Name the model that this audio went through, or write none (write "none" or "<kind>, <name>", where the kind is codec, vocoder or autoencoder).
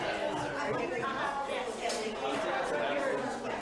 none